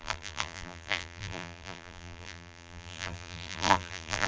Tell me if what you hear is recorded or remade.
remade